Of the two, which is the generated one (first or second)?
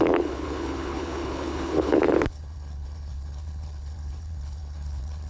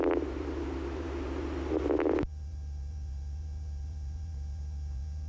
first